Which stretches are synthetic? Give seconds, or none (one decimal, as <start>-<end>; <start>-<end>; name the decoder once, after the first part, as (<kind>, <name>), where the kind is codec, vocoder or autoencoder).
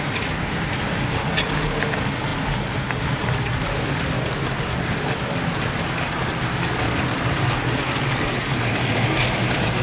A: none